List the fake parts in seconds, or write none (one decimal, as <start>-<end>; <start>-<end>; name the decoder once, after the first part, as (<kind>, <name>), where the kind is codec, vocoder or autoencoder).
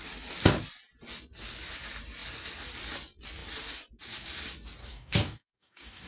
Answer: 4.8-6.1 (codec, DAC)